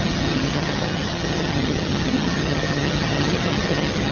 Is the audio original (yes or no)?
no